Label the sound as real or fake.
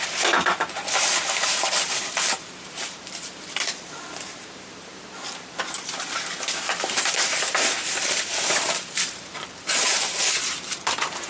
fake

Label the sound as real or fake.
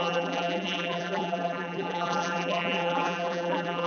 fake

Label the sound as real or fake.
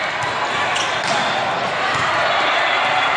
real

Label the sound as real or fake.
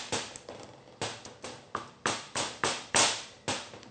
real